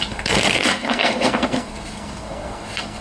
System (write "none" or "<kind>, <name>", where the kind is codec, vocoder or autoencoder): codec, SNAC